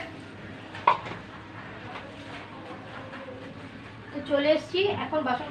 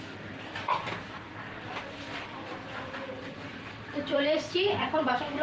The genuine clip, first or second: first